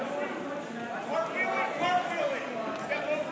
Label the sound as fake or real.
real